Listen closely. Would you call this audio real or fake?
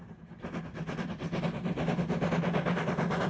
real